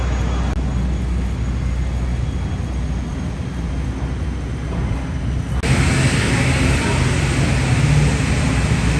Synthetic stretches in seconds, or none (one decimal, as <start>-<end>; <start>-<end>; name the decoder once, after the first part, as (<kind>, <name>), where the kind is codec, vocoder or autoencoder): none